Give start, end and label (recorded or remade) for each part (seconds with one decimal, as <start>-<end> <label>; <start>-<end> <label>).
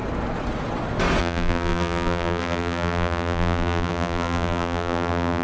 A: 0.0-1.2 recorded; 1.2-5.4 remade